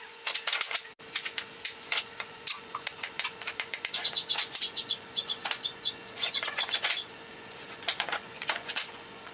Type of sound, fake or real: fake